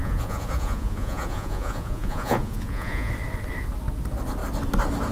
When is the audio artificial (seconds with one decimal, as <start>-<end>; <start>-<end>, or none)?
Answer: 0.0-3.1